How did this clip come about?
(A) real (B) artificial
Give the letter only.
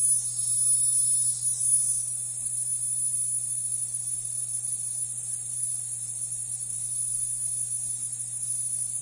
A